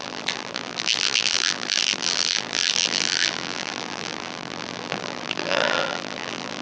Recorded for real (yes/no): no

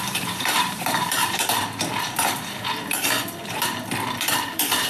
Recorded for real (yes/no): no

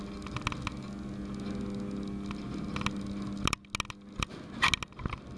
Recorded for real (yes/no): yes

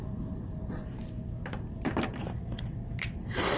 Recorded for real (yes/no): no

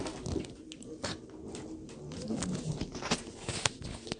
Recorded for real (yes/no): yes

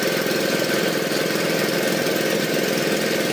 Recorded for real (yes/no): yes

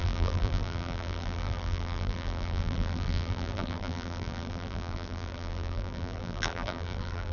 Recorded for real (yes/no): no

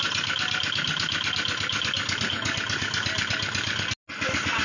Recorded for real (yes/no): yes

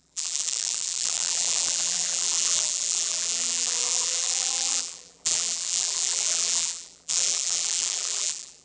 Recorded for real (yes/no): no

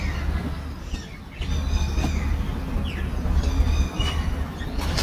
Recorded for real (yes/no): yes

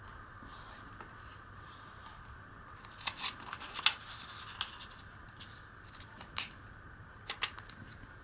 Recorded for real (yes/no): yes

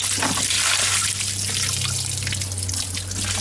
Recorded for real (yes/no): yes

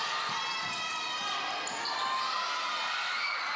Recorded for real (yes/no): yes